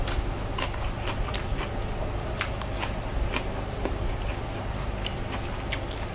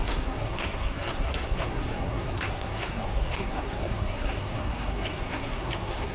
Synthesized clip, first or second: second